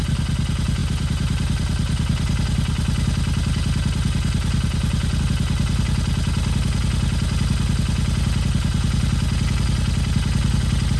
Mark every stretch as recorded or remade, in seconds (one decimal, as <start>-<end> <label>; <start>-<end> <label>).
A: 0.0-11.0 recorded